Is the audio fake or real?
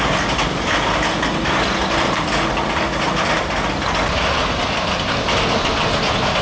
real